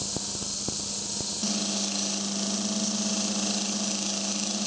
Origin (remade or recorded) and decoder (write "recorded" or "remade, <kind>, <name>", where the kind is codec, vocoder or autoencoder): recorded